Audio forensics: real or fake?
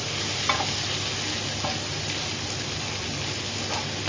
real